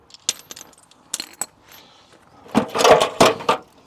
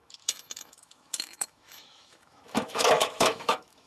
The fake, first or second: second